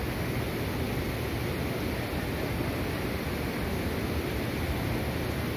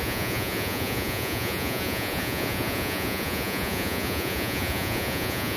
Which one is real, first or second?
first